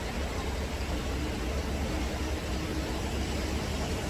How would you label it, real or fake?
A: real